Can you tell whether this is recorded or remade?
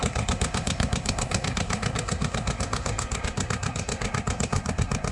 remade